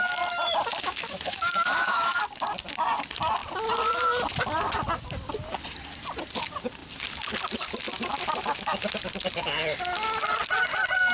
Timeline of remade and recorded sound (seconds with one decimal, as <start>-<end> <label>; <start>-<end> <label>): 0.0-0.7 recorded; 0.7-2.2 remade; 2.2-11.1 recorded